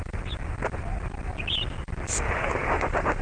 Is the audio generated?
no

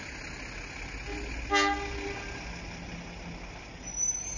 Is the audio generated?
no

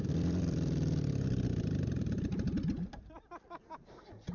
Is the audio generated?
yes